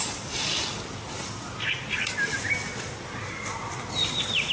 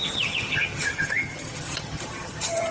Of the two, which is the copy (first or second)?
second